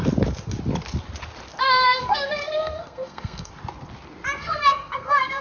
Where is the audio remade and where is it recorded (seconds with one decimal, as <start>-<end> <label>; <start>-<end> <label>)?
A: 0.0-1.6 recorded; 1.6-3.5 remade; 3.5-4.4 recorded; 4.4-5.4 remade